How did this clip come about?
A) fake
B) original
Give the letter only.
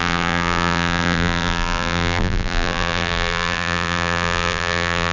A